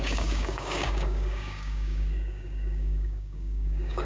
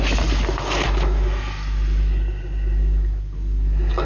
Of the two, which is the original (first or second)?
second